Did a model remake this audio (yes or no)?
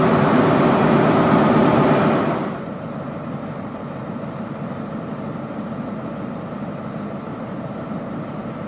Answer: yes